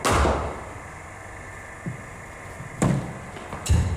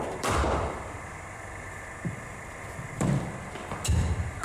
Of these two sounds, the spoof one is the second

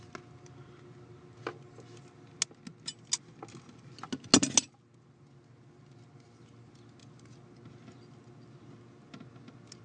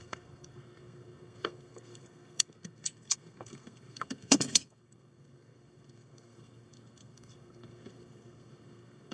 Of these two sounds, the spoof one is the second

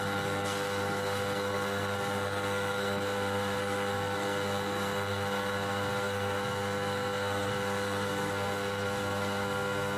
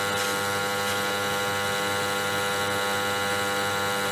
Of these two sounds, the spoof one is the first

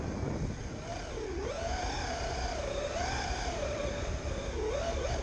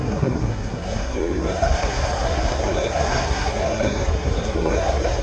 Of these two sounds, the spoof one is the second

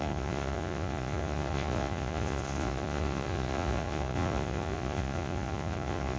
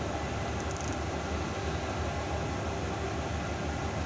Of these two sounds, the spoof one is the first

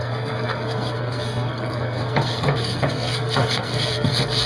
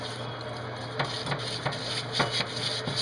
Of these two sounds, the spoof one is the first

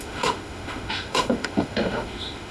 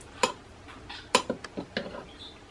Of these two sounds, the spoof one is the first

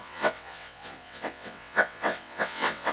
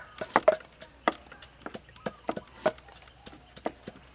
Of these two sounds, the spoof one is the first